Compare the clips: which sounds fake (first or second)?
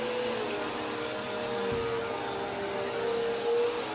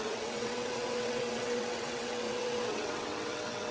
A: second